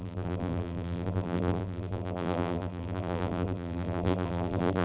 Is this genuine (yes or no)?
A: no